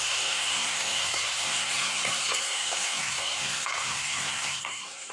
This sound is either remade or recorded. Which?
remade